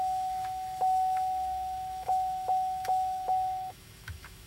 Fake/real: fake